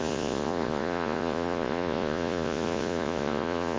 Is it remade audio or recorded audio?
remade